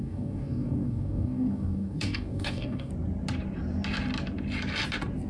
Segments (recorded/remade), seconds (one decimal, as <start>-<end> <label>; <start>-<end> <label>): 0.0-2.9 remade; 2.9-5.3 recorded